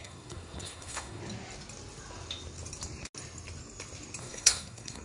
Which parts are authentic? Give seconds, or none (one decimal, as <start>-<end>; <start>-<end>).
1.2-4.2